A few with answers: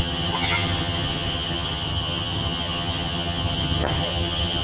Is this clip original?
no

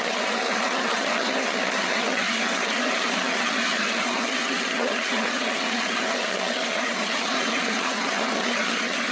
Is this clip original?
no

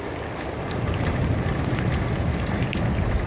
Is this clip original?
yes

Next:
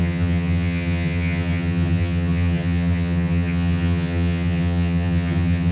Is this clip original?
no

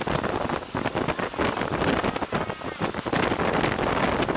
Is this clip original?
yes